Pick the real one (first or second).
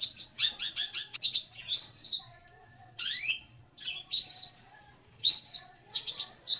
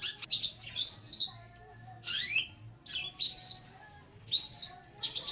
second